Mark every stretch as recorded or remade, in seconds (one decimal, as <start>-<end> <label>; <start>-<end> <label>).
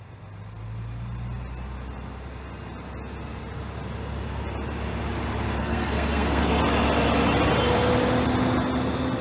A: 0.0-5.6 recorded; 5.6-6.6 remade; 6.6-9.2 recorded